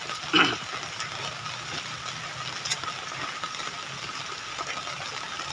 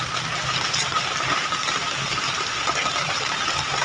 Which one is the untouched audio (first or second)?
first